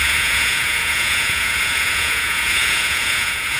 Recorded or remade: remade